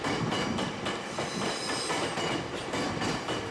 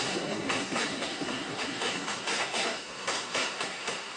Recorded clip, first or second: first